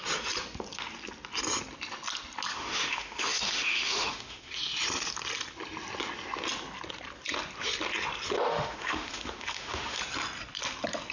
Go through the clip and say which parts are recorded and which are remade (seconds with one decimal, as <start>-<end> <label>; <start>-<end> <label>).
0.0-2.5 recorded; 2.5-4.5 remade; 4.5-8.5 recorded; 8.5-10.0 remade; 10.0-11.1 recorded